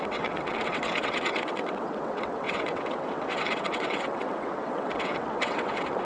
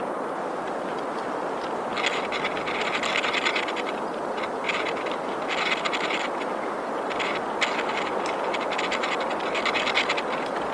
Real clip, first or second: second